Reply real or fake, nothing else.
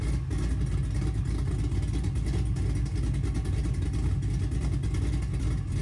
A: real